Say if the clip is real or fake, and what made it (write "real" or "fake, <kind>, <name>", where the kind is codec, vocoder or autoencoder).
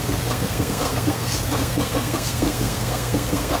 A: fake, codec, SNAC